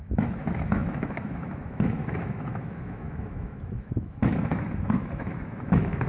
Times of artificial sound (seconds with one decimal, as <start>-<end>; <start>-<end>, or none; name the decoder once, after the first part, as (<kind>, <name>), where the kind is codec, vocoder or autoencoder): 0.0-6.1 (autoencoder, DAC-VAE)